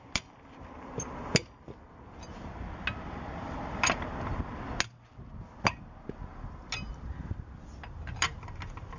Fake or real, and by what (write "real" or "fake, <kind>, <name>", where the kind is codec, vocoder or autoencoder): real